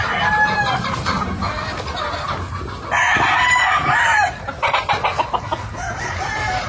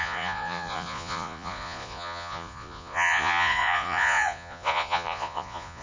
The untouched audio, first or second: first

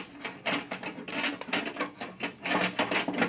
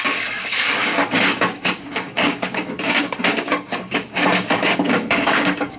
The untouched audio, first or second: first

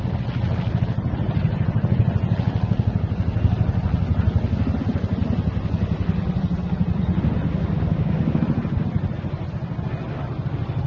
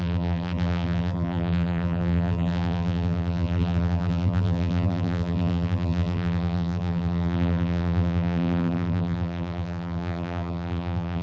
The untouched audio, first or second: first